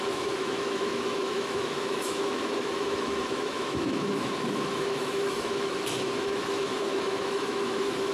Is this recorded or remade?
remade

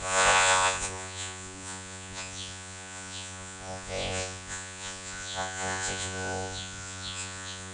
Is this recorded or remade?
remade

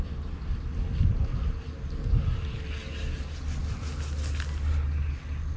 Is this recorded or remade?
recorded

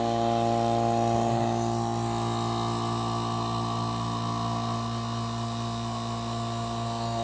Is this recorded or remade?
recorded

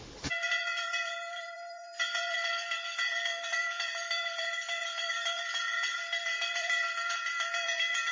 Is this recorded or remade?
remade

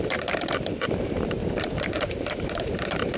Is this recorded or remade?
remade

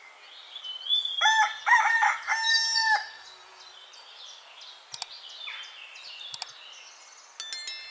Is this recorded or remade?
recorded